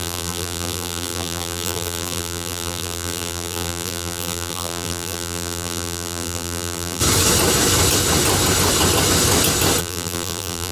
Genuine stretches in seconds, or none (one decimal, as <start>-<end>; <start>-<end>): 7.0-9.8